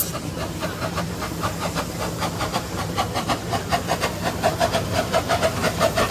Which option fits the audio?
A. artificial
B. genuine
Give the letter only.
B